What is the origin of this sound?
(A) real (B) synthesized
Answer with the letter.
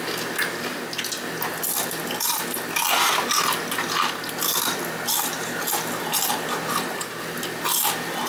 A